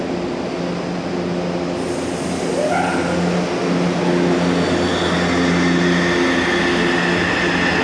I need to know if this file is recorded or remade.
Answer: recorded